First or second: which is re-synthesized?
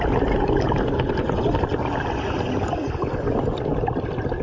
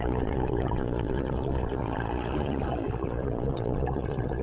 second